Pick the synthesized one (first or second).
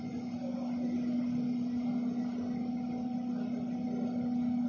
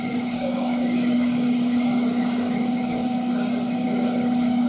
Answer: second